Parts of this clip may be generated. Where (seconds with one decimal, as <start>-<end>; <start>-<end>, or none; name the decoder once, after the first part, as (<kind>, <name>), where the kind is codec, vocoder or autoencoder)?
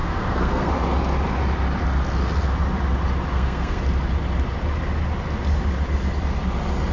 0.0-0.7 (codec, SNAC); 3.3-3.8